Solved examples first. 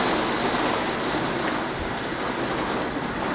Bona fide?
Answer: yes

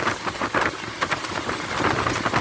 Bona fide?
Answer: yes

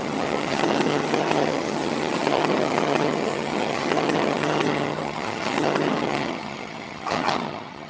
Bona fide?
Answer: no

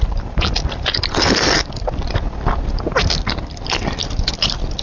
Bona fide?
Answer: yes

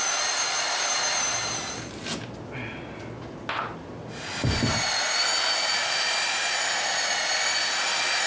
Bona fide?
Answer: yes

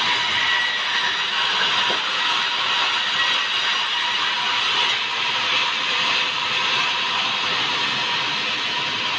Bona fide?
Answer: yes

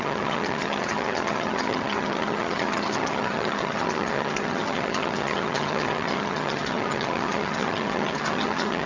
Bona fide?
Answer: no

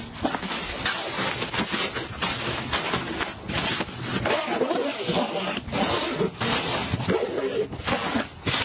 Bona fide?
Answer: yes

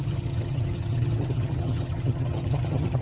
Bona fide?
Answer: no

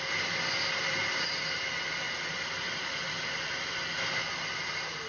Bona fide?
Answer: yes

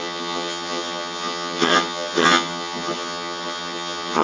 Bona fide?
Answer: no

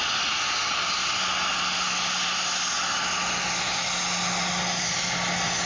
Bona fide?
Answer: yes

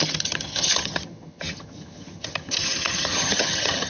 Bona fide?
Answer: no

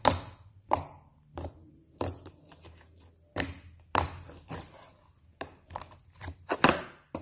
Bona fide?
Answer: yes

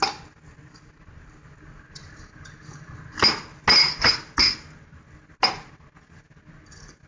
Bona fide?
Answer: yes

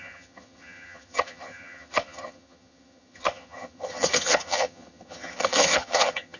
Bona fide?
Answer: no